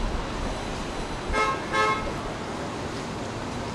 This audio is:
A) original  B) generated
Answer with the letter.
A